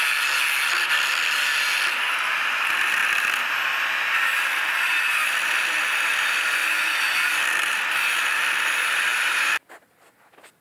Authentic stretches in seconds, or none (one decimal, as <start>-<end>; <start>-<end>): 0.0-10.6